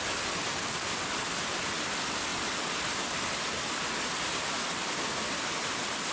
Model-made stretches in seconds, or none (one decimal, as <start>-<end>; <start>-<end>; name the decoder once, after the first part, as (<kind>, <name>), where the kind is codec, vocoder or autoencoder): none